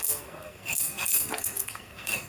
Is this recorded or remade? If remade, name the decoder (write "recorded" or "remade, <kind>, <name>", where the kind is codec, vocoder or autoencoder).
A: remade, codec, SNAC